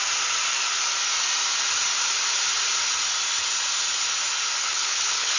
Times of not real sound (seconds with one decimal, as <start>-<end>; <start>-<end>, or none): 4.6-5.4